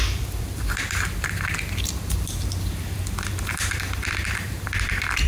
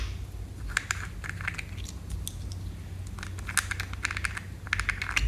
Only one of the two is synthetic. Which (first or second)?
first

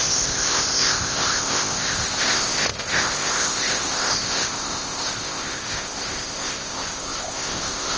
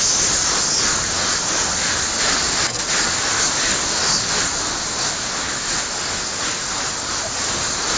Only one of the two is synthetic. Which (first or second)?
first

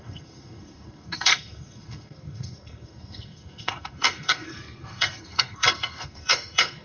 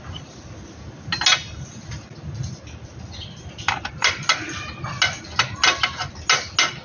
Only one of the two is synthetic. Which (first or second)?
first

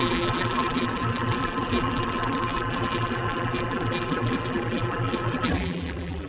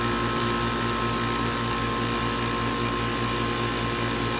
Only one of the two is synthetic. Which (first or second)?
first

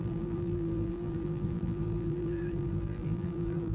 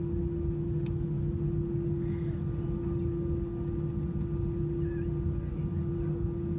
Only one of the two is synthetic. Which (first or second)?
first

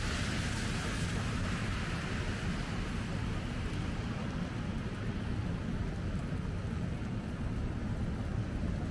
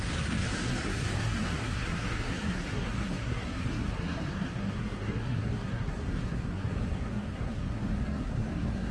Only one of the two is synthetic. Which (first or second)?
second